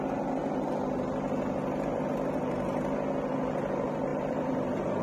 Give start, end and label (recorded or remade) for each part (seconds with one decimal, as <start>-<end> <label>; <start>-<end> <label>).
0.0-4.1 recorded; 4.1-5.0 remade